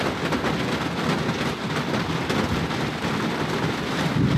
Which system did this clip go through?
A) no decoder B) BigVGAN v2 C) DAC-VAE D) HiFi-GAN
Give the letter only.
A